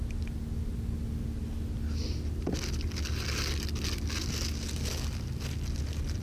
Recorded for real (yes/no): yes